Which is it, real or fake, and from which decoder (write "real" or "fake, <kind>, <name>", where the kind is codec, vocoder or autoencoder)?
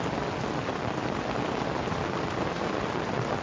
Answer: real